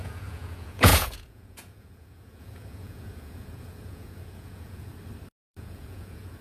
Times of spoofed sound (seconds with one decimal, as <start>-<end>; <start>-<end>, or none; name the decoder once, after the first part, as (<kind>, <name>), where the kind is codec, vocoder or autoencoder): 0.0-4.9 (vocoder, Vocos); 5.6-6.4